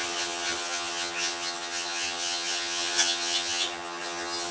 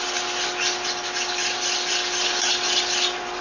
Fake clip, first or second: first